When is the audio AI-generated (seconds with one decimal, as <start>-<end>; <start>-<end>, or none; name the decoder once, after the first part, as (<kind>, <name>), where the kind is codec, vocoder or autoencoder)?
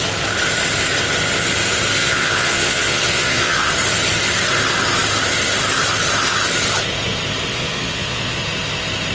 2.0-3.7 (vocoder, Vocos); 7.5-8.4